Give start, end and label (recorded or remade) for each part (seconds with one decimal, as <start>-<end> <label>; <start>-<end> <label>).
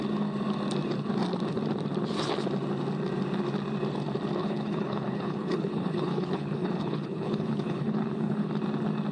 0.0-4.4 recorded; 4.4-8.5 remade; 8.5-9.1 recorded